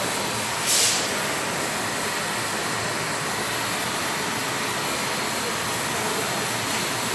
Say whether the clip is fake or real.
real